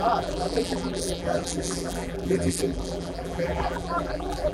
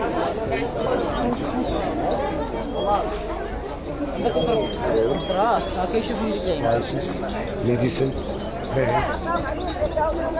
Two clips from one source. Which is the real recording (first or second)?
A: second